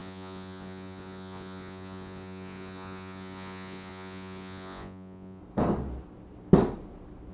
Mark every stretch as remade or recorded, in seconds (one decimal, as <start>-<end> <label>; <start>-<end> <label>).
0.0-5.4 remade; 5.4-7.3 recorded

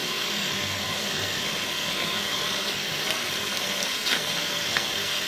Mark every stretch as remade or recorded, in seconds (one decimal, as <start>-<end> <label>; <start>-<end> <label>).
0.0-5.3 remade

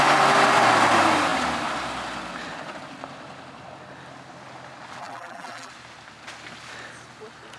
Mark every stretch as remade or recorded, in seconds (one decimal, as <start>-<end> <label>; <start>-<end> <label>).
0.0-5.0 recorded; 5.0-5.7 remade; 5.7-7.6 recorded

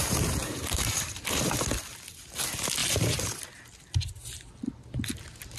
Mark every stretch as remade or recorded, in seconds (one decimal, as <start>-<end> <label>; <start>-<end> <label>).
0.0-1.2 remade; 1.2-5.6 recorded